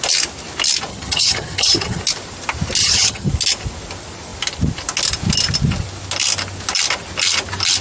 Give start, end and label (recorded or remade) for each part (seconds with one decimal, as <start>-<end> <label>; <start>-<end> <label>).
0.0-0.9 recorded; 0.9-2.0 remade; 2.0-2.8 recorded; 2.8-3.3 remade; 3.3-7.8 recorded